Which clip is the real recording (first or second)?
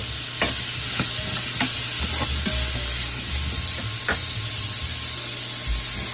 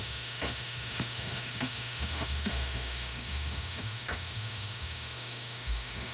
first